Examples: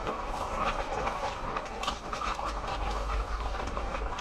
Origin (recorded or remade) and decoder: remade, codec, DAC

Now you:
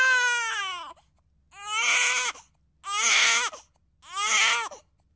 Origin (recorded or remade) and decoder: recorded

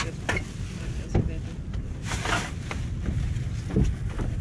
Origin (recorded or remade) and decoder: recorded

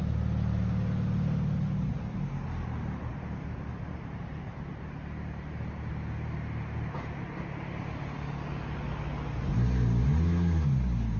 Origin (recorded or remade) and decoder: recorded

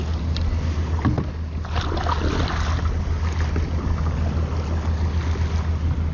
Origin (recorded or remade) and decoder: recorded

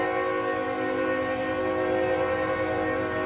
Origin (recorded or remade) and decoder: recorded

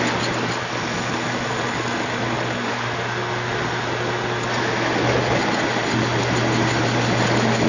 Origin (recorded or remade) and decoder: recorded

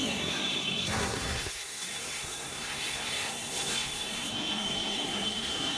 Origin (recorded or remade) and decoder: remade, codec, SNAC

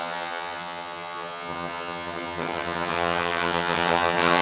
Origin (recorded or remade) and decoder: remade, vocoder, HiFi-GAN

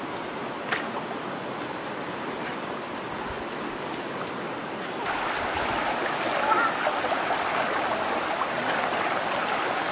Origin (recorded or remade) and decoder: recorded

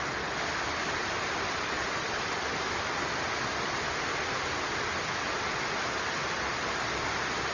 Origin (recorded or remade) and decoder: recorded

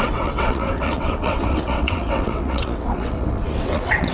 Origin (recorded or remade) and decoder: remade, vocoder, WaveNeXt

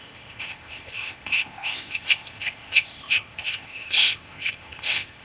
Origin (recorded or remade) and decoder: remade, codec, ZipCodec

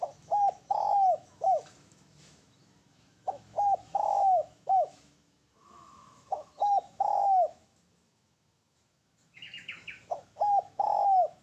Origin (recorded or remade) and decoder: remade, autoencoder, DAC-VAE